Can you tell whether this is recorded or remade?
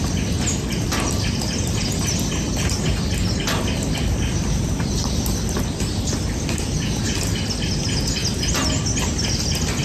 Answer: recorded